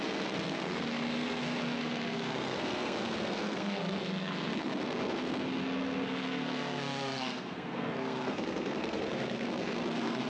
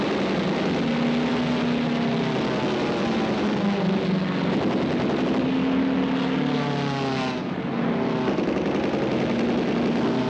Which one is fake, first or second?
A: first